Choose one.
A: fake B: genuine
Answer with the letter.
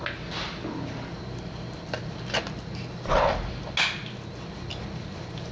B